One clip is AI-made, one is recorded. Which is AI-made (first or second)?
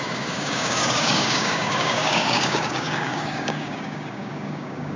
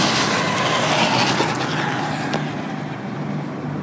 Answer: first